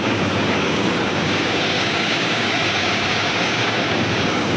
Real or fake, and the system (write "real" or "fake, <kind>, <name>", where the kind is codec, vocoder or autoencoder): fake, codec, DAC